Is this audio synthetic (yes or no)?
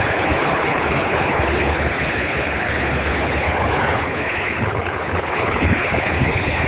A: yes